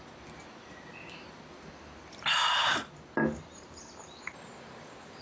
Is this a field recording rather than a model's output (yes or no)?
yes